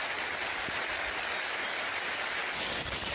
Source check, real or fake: real